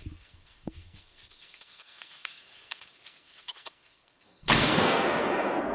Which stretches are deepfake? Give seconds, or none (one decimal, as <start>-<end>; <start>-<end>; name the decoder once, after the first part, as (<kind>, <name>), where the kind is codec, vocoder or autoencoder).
0.0-5.7 (codec, SNAC)